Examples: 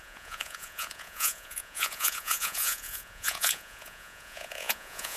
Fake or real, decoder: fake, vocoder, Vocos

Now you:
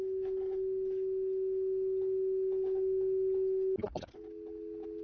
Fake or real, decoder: real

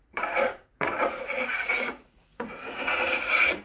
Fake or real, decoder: fake, vocoder, Vocos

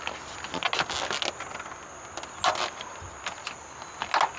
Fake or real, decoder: real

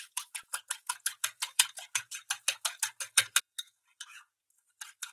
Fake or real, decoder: fake, vocoder, Vocos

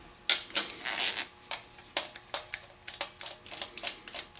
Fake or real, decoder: real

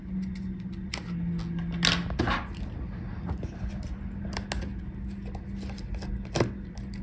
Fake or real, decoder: real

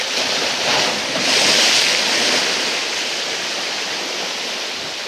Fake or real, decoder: real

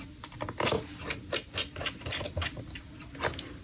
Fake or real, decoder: real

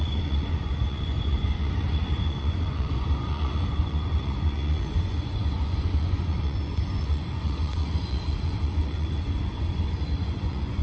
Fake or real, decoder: fake, vocoder, Vocos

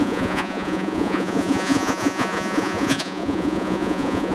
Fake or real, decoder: fake, vocoder, Vocos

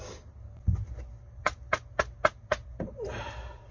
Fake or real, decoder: real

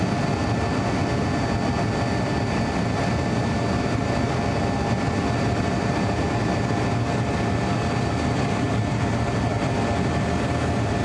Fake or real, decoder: real